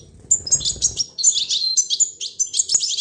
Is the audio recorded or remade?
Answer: recorded